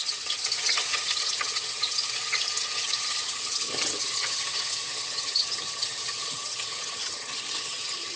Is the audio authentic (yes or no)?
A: no